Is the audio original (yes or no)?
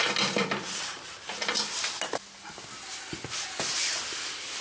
yes